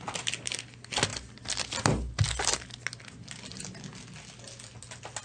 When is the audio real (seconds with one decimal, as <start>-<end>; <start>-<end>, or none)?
0.0-5.2